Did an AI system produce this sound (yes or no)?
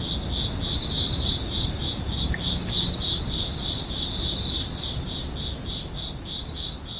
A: no